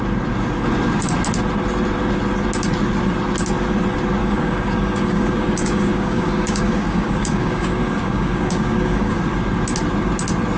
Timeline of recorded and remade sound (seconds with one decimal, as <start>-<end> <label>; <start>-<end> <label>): 0.0-4.2 recorded; 4.2-9.2 remade; 9.2-10.6 recorded